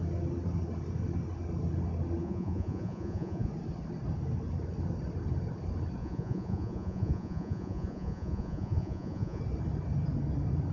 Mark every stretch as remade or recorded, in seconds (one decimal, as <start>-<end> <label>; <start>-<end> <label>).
0.0-2.2 recorded; 2.2-3.5 remade; 3.5-6.0 recorded; 6.0-9.4 remade; 9.4-10.7 recorded